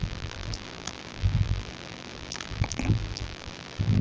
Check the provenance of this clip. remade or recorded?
remade